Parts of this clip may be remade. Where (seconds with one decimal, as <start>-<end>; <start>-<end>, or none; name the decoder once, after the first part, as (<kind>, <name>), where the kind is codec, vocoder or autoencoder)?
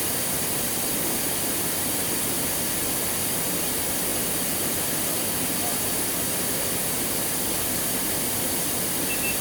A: 0.0-0.7 (vocoder, BigVGAN v2); 1.5-4.1; 5.9-9.4